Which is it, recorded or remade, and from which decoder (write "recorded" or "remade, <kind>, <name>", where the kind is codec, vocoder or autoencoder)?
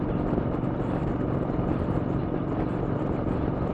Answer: recorded